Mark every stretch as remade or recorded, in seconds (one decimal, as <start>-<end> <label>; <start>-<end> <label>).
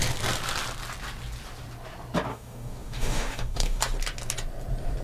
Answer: 0.0-2.3 recorded; 2.3-3.8 remade; 3.8-5.0 recorded